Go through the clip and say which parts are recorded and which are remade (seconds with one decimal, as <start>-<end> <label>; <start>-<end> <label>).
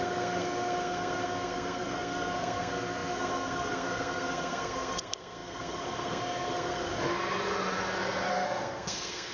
0.0-6.9 remade; 6.9-8.3 recorded; 8.3-9.3 remade